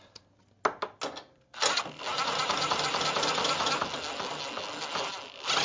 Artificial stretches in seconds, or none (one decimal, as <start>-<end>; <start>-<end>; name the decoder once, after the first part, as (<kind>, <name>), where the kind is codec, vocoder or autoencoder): none